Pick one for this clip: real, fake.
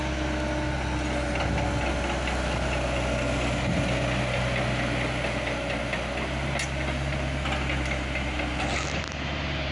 real